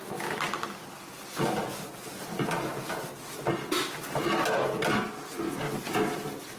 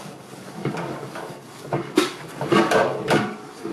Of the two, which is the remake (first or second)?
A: second